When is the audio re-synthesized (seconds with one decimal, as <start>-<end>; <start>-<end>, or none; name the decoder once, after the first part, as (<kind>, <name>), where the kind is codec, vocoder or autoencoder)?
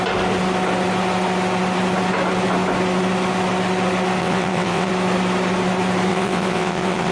4.2-4.9 (vocoder, WaveNeXt); 6.1-7.1